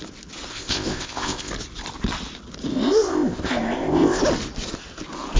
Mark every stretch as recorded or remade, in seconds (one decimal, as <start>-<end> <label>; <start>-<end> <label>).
0.0-0.5 recorded; 0.5-1.5 remade; 1.5-2.7 recorded; 2.7-4.2 remade; 4.2-5.4 recorded